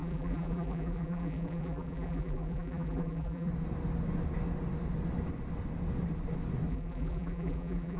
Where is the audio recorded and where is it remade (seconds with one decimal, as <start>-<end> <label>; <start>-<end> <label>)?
0.0-3.5 remade; 3.5-6.7 recorded; 6.7-8.0 remade